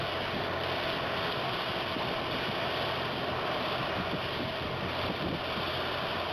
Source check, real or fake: fake